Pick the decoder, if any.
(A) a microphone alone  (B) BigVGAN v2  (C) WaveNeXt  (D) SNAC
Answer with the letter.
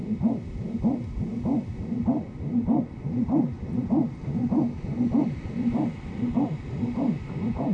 A